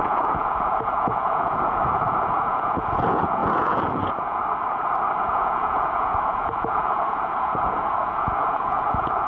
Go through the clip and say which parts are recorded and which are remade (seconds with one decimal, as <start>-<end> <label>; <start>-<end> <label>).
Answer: 0.0-4.4 remade; 4.4-5.2 recorded; 5.2-9.3 remade

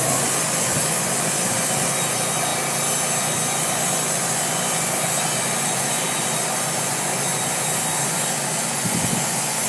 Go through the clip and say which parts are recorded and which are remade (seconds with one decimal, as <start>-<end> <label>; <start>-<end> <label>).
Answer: 0.0-2.5 remade; 2.5-3.2 recorded; 3.2-9.7 remade

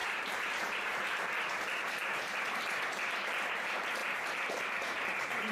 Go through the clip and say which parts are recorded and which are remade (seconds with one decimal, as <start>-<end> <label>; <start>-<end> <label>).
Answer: 0.0-1.2 remade; 1.2-4.0 recorded; 4.0-5.5 remade

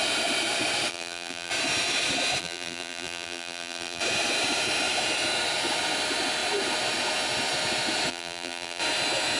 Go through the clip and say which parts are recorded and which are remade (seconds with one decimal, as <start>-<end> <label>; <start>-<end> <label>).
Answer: 0.0-0.9 recorded; 0.9-1.5 remade; 1.5-2.4 recorded; 2.4-4.0 remade; 4.0-8.1 recorded; 8.1-8.8 remade; 8.8-9.4 recorded

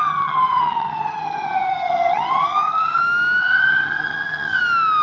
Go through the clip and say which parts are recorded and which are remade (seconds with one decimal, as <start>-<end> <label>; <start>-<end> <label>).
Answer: 0.0-3.0 remade; 3.0-3.4 recorded; 3.4-4.6 remade; 4.6-5.0 recorded

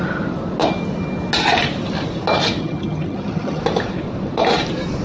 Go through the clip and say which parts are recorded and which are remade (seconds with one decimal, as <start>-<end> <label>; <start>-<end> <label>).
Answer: 0.0-2.6 recorded; 2.6-3.6 remade; 3.6-5.0 recorded

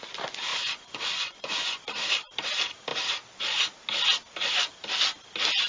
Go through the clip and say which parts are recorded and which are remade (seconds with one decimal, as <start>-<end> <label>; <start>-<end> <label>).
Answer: 0.0-0.5 recorded; 0.5-1.8 remade; 1.8-5.7 recorded